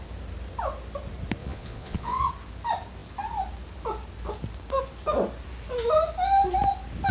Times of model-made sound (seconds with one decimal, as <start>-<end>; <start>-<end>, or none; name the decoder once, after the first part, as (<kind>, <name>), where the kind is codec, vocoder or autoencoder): 1.4-2.3 (vocoder, Vocos)